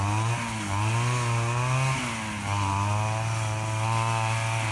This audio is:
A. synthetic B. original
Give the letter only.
B